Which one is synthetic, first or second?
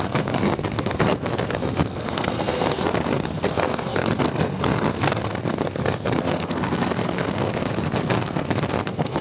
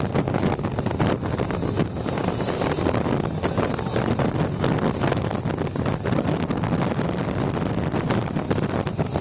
first